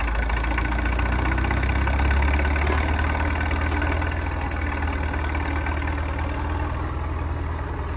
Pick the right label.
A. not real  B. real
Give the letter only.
B